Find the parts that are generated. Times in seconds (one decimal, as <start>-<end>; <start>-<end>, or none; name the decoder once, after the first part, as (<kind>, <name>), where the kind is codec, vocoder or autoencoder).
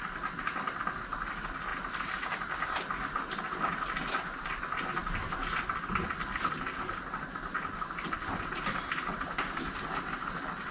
none